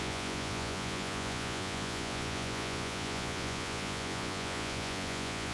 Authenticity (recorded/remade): remade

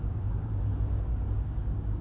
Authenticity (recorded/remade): remade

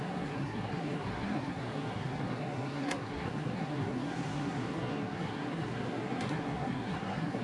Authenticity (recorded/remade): remade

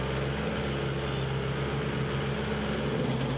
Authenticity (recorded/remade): recorded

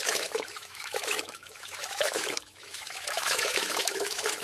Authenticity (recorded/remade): remade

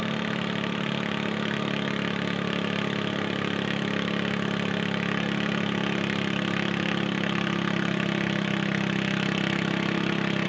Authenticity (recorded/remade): recorded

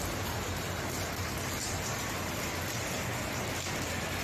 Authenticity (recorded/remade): recorded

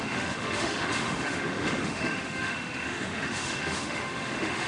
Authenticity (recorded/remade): remade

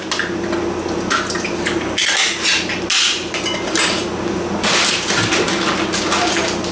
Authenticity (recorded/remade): recorded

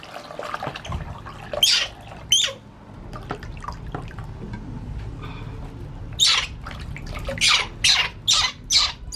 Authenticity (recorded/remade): recorded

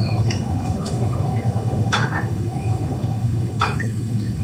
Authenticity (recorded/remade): remade